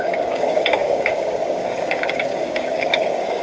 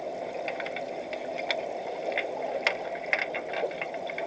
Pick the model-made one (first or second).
first